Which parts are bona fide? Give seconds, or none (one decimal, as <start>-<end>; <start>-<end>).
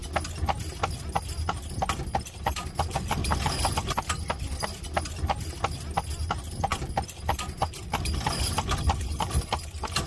0.0-1.0; 3.2-4.3